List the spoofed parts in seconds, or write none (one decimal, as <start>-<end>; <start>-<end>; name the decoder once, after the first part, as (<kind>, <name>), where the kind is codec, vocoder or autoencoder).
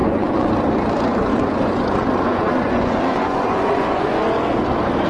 0.0-0.5 (vocoder, Vocos); 1.3-4.2